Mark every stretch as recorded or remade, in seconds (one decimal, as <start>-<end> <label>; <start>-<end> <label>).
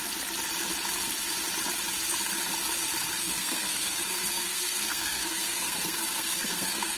0.0-3.2 recorded; 3.2-7.0 remade